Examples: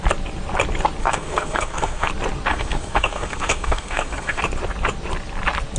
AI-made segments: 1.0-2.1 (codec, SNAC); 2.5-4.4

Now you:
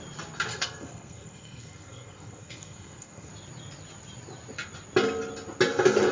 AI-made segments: 0.5-3.3 (codec, SNAC)